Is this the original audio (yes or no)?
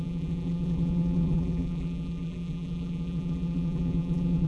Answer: no